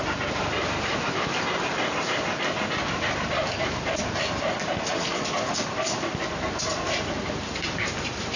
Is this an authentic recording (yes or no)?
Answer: yes